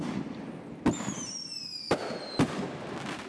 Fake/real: real